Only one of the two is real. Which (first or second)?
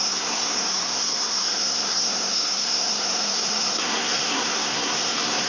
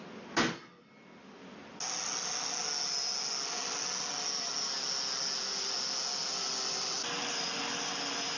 second